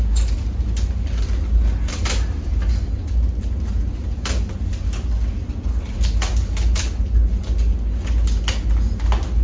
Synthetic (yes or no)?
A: no